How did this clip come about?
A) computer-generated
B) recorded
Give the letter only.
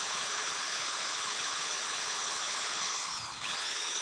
A